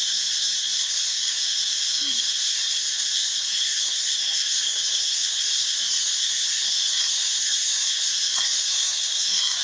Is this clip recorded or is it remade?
remade